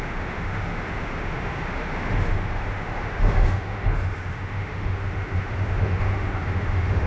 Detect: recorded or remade remade